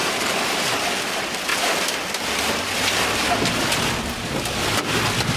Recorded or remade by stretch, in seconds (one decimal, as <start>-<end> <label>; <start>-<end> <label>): 0.0-1.0 remade; 1.0-5.4 recorded